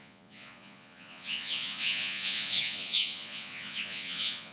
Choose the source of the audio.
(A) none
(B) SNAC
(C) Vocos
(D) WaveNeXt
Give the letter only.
C